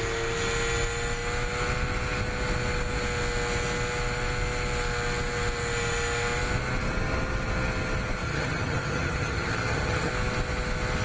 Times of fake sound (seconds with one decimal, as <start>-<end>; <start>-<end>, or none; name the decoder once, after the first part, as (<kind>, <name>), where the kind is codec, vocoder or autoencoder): 8.2-10.1 (vocoder, HiFi-GAN)